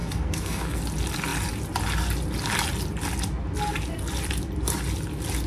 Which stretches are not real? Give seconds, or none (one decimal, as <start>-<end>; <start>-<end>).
0.0-0.8